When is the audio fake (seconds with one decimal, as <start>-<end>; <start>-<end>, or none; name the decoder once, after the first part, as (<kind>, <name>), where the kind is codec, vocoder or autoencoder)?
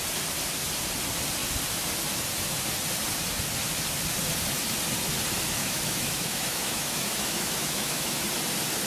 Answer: 5.6-8.3 (autoencoder, DAC-VAE)